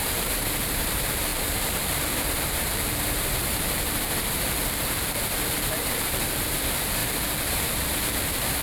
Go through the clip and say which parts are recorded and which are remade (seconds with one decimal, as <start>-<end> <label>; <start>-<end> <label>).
0.0-8.6 remade